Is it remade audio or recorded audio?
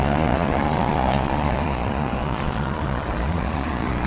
remade